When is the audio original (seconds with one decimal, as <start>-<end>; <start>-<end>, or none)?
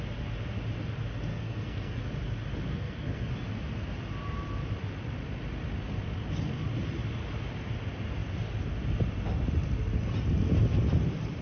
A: 0.0-1.3; 2.0-2.7; 3.3-11.4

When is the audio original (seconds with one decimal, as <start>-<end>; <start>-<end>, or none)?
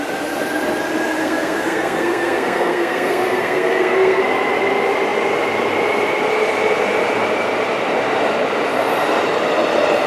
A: 0.0-1.2; 4.2-10.1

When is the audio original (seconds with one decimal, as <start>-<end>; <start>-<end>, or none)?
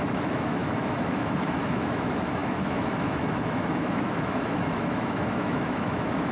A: none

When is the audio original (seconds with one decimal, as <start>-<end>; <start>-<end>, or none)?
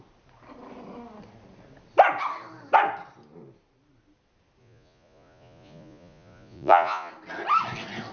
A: 0.0-4.6; 7.1-8.1